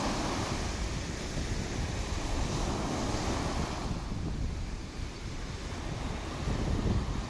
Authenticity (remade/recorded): recorded